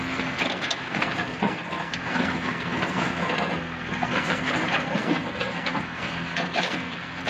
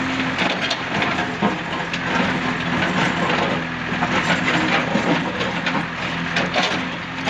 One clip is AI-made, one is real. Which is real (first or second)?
second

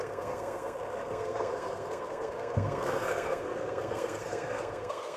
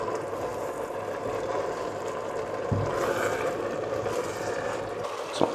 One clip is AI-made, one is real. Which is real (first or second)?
second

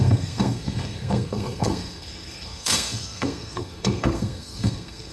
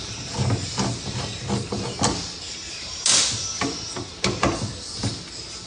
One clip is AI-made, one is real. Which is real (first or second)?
second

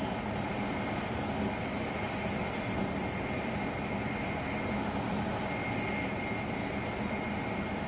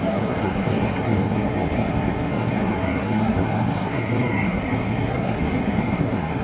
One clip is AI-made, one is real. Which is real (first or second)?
first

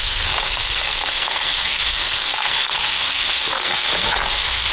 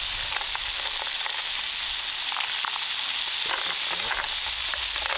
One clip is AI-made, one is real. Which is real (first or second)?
second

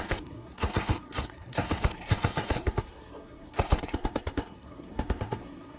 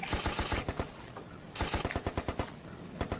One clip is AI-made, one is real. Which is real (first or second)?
second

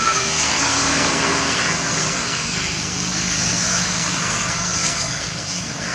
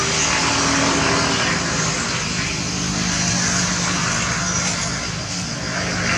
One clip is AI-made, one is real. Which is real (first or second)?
second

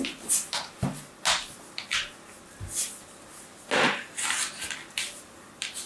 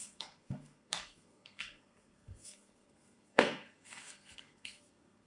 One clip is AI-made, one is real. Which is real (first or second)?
first